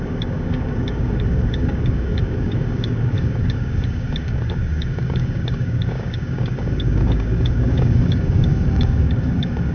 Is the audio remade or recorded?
remade